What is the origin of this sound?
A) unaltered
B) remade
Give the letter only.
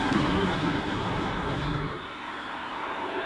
B